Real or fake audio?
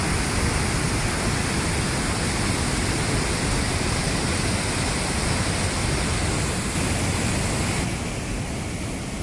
real